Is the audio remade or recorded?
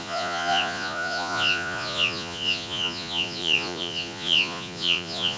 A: remade